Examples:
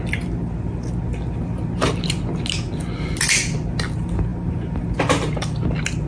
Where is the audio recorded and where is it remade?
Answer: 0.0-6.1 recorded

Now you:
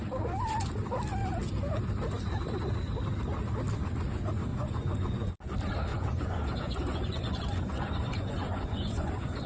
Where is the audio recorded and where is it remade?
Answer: 0.0-4.5 recorded; 4.5-5.3 remade; 5.3-5.9 recorded; 5.9-9.5 remade

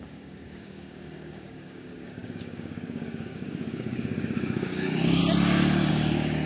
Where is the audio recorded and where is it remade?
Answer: 0.0-5.2 remade; 5.2-5.9 recorded; 5.9-6.5 remade

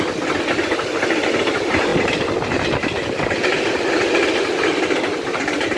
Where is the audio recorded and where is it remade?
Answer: 0.0-5.8 recorded